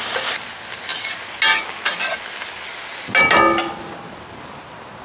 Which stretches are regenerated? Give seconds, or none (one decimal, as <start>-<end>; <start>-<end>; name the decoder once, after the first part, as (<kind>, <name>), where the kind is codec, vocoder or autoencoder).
none